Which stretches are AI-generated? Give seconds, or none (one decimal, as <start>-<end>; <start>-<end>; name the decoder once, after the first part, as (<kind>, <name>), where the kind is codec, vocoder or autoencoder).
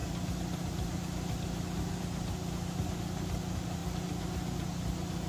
none